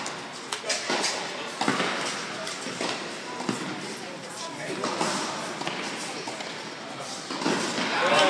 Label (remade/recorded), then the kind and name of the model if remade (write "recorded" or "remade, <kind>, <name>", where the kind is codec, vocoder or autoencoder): recorded